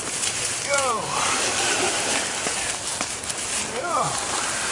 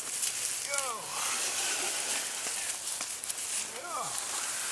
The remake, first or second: first